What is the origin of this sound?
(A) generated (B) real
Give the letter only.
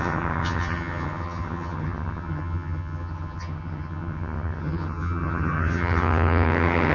A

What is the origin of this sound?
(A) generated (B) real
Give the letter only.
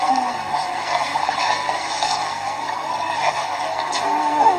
A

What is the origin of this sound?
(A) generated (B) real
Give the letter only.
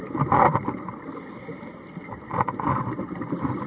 A